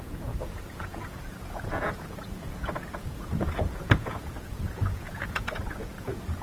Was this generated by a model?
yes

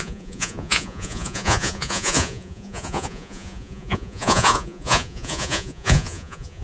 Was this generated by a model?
yes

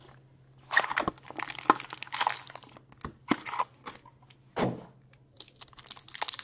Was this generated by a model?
no